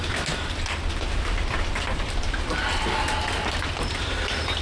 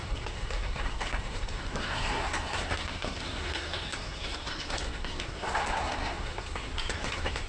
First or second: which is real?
first